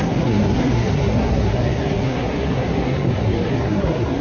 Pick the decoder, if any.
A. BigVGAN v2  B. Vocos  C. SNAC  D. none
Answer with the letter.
C